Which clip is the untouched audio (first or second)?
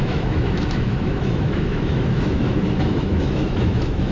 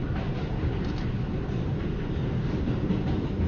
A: second